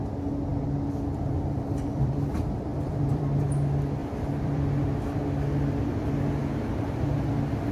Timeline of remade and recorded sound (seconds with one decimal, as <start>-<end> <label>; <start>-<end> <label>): 0.0-2.7 recorded; 2.7-3.4 remade; 3.4-4.0 recorded; 4.0-4.8 remade; 4.8-7.7 recorded